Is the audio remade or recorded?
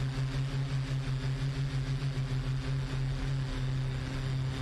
recorded